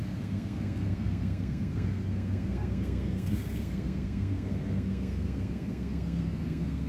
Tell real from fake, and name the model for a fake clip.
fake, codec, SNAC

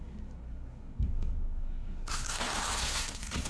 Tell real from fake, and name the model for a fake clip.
fake, codec, SNAC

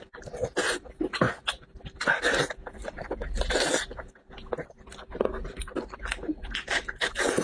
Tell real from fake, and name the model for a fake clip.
real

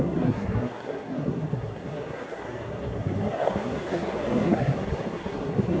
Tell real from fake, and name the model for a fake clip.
fake, codec, SNAC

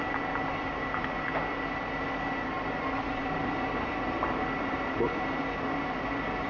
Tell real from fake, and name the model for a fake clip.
real